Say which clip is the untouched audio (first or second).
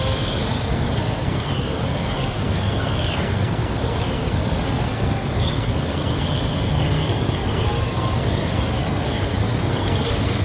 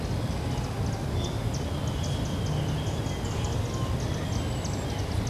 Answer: second